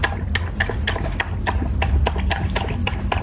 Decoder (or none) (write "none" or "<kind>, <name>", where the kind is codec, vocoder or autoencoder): none